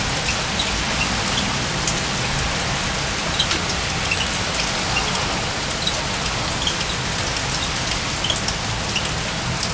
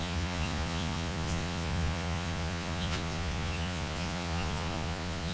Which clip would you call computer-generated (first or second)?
second